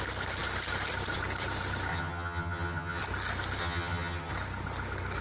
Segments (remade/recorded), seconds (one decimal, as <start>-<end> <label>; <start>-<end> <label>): 0.0-1.9 recorded; 1.9-3.0 remade; 3.0-3.6 recorded; 3.6-4.3 remade; 4.3-5.2 recorded